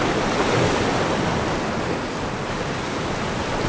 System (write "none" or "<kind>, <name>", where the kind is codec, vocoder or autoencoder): none